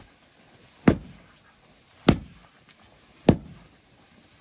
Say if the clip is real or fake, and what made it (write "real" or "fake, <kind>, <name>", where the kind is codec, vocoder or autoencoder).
real